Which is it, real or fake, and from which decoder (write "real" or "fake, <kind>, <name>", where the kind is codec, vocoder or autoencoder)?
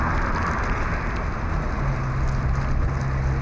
real